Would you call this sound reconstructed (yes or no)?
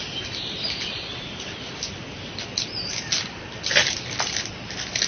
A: no